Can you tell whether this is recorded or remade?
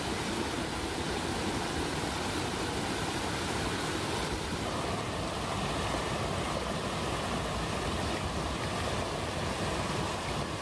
recorded